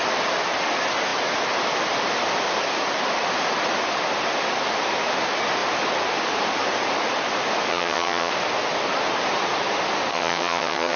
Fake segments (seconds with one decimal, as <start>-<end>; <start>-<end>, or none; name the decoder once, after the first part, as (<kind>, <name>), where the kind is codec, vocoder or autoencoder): 7.7-8.3 (vocoder, HiFi-GAN); 10.1-11.0